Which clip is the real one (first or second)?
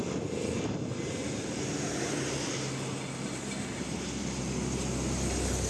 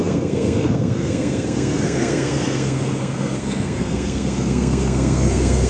first